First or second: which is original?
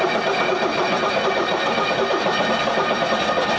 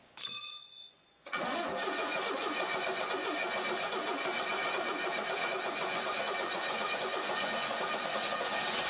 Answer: first